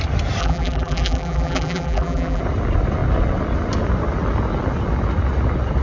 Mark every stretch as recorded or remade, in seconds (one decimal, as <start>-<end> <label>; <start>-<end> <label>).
0.0-0.4 recorded; 0.4-2.4 remade; 2.4-5.8 recorded

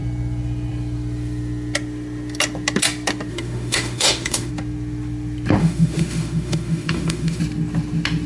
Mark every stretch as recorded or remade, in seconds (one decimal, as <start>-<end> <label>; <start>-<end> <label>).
0.0-3.3 recorded; 3.3-4.5 remade; 4.5-5.6 recorded; 5.6-7.4 remade; 7.4-8.3 recorded